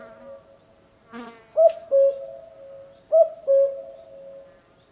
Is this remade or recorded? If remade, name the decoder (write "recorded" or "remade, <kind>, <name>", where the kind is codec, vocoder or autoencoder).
recorded